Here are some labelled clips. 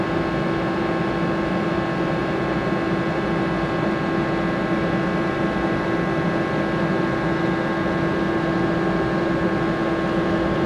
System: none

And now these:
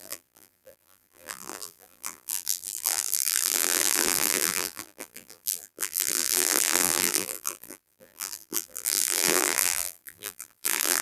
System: vocoder, BigVGAN v2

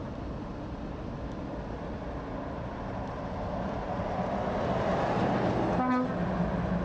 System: none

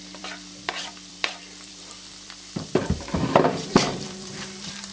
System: vocoder, BigVGAN v2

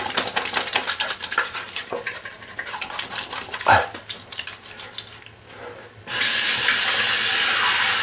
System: none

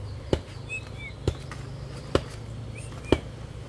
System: none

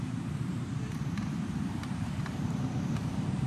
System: vocoder, BigVGAN v2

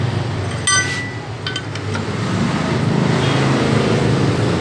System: none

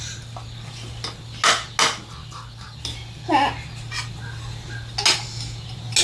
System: none